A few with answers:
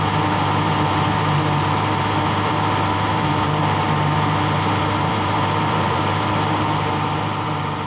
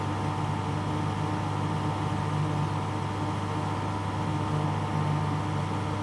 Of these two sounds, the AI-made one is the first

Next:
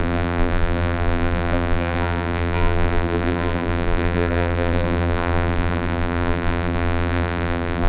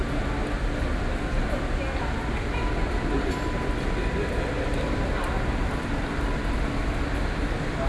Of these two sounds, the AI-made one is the first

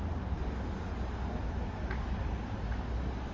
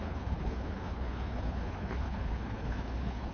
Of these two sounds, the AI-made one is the second